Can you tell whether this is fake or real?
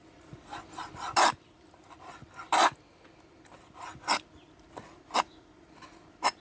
real